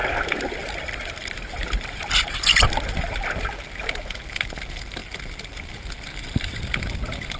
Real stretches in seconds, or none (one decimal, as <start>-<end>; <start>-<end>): 0.0-7.4